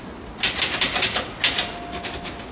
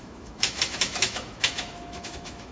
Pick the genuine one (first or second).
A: first